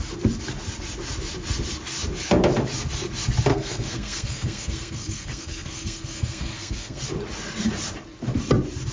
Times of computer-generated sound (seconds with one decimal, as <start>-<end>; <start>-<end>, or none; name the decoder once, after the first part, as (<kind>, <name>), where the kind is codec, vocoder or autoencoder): 3.5-7.0 (codec, SNAC)